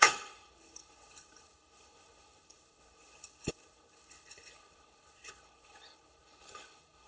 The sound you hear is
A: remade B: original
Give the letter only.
A